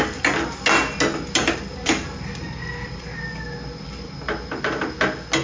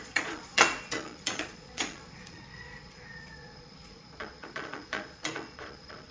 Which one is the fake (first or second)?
second